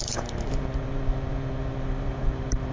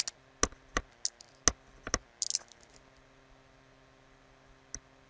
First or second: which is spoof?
first